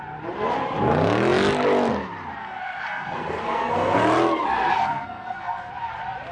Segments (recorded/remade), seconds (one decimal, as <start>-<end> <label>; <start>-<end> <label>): 0.0-2.4 recorded; 2.4-4.0 remade; 4.0-4.7 recorded; 4.7-5.7 remade; 5.7-6.3 recorded